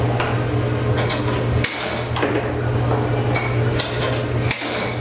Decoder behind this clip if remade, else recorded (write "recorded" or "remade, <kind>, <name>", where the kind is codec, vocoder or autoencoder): recorded